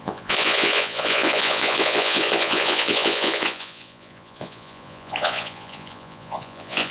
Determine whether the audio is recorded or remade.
remade